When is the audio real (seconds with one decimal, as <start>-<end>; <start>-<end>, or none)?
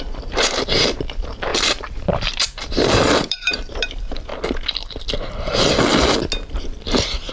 4.3-7.3